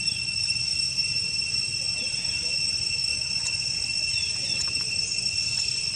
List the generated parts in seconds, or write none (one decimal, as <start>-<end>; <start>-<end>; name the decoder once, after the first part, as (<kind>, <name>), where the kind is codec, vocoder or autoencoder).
0.0-0.7 (vocoder, Vocos); 2.6-6.0